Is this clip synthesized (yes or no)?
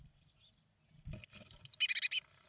no